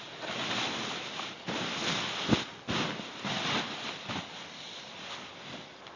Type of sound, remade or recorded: recorded